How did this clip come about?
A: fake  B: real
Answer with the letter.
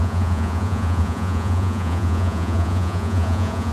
A